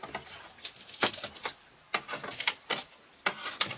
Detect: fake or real real